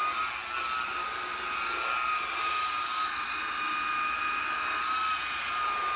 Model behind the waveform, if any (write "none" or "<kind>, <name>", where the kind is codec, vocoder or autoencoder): none